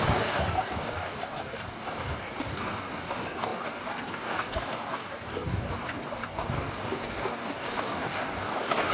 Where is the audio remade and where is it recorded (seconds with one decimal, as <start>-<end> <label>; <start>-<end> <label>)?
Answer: 0.0-8.9 remade